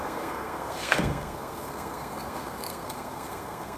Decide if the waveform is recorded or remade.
remade